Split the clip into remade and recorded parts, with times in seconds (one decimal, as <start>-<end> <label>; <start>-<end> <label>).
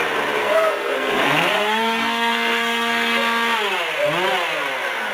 0.0-0.4 recorded; 0.4-3.2 remade; 3.2-5.1 recorded